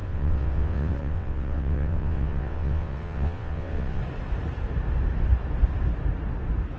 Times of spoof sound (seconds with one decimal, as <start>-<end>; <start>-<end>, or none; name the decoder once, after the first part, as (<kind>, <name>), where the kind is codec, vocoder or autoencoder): 0.0-4.0 (vocoder, WaveNeXt)